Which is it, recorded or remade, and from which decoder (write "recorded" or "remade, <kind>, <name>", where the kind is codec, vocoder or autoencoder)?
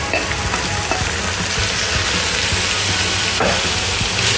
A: recorded